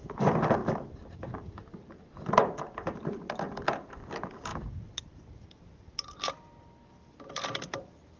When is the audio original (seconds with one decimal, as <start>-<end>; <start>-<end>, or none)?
0.0-0.6; 1.5-8.2